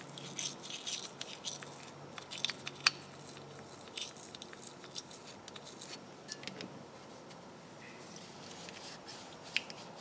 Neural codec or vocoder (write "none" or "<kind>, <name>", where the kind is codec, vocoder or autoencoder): none